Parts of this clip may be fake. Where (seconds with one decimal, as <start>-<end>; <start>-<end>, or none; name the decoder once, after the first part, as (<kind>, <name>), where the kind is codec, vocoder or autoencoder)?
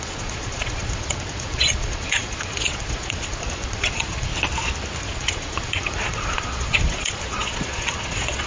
0.0-4.3 (vocoder, Vocos); 5.0-8.5